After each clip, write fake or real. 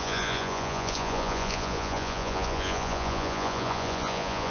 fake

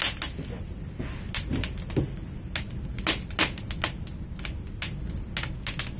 real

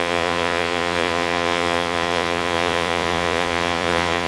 fake